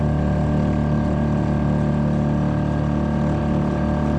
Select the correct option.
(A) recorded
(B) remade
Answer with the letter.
A